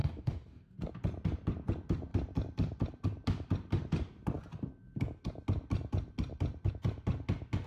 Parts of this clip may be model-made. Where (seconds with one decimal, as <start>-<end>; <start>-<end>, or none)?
0.0-0.8